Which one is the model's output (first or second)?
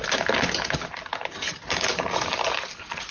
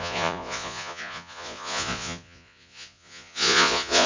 second